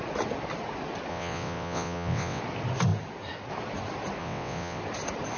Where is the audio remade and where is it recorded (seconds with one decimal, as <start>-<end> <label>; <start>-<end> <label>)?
0.0-1.1 recorded; 1.1-2.4 remade; 2.4-4.2 recorded; 4.2-4.8 remade; 4.8-5.4 recorded